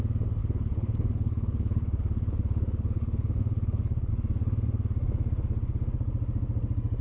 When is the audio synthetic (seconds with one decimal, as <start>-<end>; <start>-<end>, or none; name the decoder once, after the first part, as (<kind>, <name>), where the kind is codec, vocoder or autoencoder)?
0.4-4.1 (codec, HILCodec)